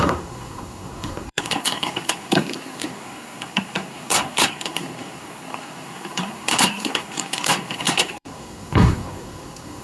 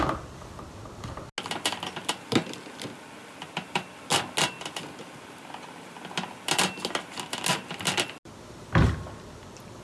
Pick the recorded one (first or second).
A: second